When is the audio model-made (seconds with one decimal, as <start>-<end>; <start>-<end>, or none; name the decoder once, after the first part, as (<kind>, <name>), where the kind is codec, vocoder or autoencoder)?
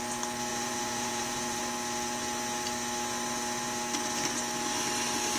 0.5-1.6 (vocoder, Vocos)